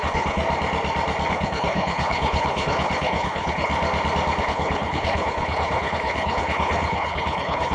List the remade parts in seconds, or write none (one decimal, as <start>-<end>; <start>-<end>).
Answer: 0.0-0.4; 1.3-3.7; 4.4-7.7